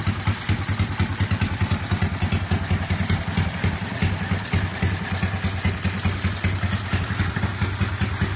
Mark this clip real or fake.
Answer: real